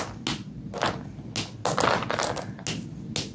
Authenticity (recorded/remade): recorded